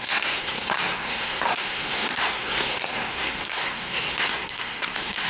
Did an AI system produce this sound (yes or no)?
yes